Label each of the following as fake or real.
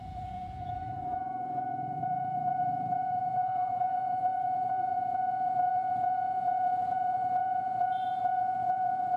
fake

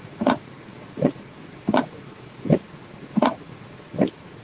fake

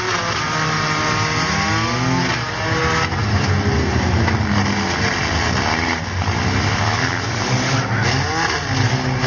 real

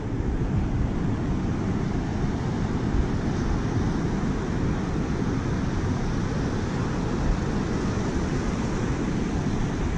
real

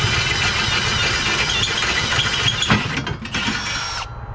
real